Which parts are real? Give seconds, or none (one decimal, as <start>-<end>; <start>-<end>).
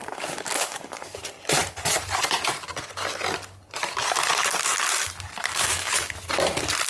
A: 1.2-5.5; 6.1-6.9